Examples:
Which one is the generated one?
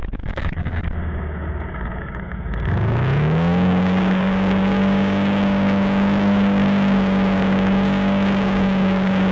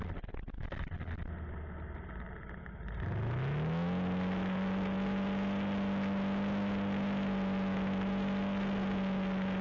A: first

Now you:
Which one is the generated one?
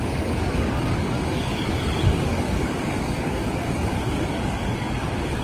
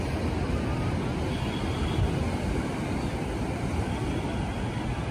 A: first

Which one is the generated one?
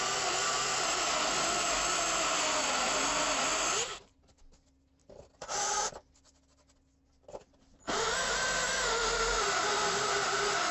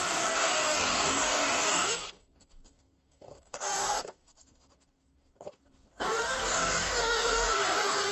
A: second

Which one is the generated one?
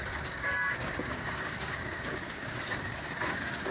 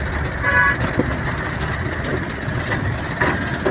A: first